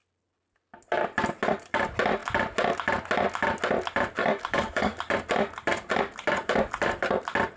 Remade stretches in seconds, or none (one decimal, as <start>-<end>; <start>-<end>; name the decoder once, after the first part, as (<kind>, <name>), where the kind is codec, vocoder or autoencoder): 4.2-5.0 (codec, DAC)